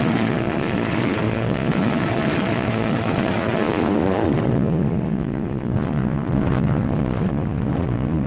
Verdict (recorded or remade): remade